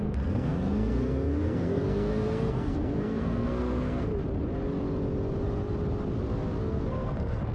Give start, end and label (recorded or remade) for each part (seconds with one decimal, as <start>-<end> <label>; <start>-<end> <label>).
0.0-4.1 remade; 4.1-6.6 recorded; 6.6-7.5 remade